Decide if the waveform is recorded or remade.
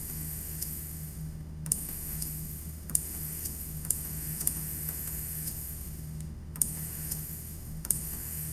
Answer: remade